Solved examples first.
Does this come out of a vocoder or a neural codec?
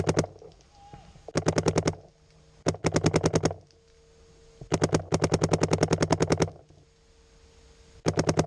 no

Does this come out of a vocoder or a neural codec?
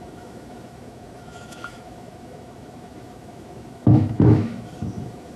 yes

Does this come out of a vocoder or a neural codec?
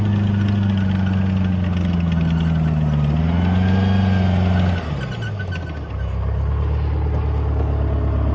no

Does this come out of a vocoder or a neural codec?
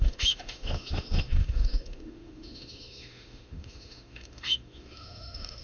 yes